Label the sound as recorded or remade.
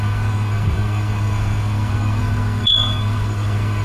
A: remade